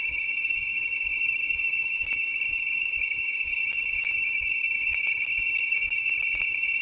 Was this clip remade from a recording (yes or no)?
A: yes